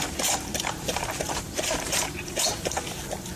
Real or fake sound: fake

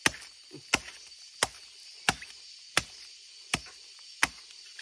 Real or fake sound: real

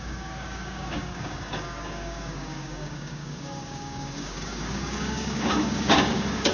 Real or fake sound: fake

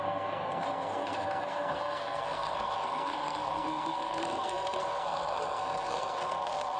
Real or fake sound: fake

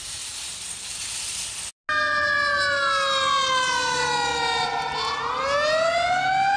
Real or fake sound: real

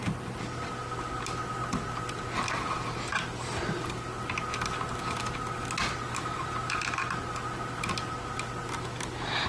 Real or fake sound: real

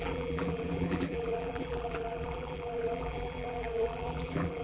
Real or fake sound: fake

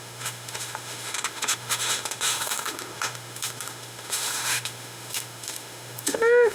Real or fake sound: fake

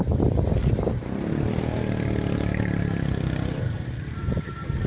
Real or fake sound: real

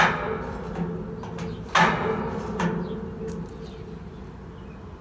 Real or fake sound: real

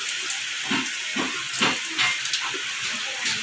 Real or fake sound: real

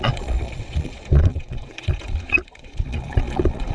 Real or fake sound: fake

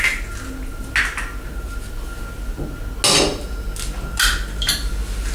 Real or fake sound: real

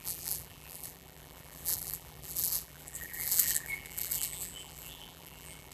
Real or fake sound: fake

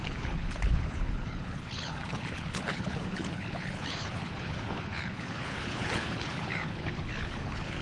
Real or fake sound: fake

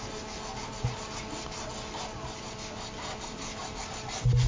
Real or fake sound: real